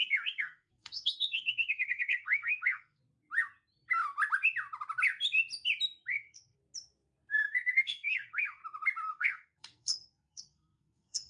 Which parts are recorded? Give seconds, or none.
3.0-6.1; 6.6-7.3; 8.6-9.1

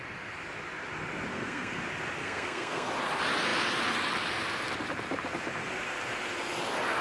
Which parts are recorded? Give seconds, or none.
0.0-1.3; 1.8-2.2; 2.9-7.0

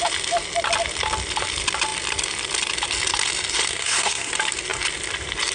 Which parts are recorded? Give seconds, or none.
0.0-3.7; 4.3-5.5

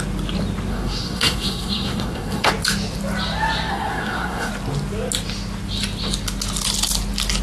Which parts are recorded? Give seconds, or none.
0.0-0.7; 2.5-3.7; 4.5-7.4

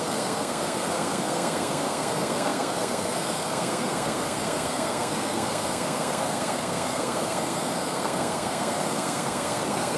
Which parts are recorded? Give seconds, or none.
none

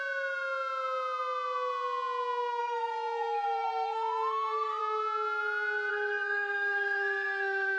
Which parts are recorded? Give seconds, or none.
0.0-2.6; 4.8-5.9

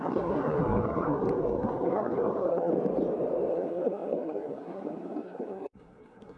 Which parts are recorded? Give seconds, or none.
2.7-3.5